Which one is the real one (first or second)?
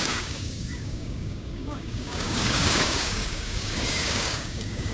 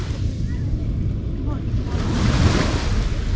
second